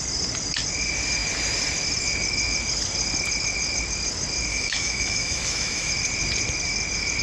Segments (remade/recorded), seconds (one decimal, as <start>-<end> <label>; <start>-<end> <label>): 0.0-4.5 recorded; 4.5-5.9 remade; 5.9-7.2 recorded